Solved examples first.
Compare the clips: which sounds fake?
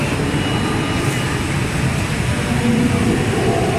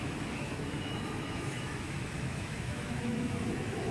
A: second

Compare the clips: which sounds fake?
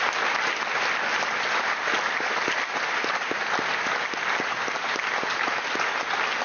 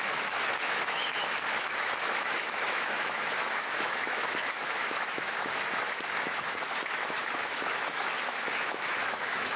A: second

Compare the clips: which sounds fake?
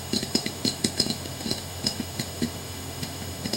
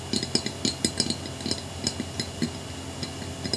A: first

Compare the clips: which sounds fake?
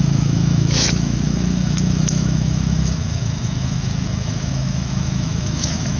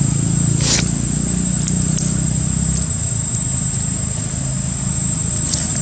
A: first